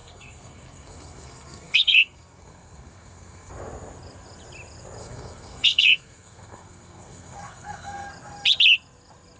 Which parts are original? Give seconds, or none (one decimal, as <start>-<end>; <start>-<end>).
3.5-5.0; 8.1-9.4